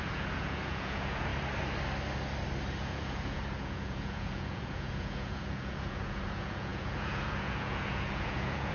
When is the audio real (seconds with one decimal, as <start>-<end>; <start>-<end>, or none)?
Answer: 1.3-2.8